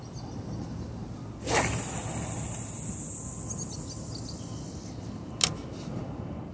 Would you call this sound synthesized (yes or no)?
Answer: no